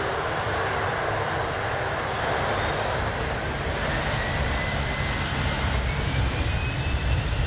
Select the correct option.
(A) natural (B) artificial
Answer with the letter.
B